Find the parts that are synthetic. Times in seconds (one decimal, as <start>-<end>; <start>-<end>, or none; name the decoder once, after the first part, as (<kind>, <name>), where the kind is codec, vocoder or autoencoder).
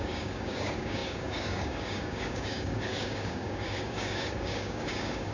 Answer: 0.0-5.3 (codec, DAC)